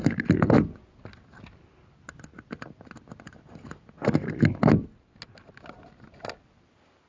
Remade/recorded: recorded